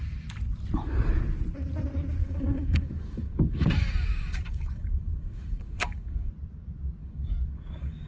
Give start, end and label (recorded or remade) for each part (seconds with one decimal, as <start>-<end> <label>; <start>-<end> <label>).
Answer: 0.0-2.2 recorded; 2.2-6.3 remade; 6.3-7.0 recorded; 7.0-8.1 remade